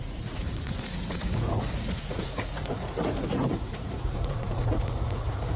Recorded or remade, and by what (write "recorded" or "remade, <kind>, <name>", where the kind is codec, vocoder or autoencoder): remade, vocoder, Vocos